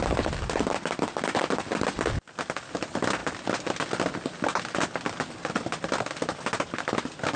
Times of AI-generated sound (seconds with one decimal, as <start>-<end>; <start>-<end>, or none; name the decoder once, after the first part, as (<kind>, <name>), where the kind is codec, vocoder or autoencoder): none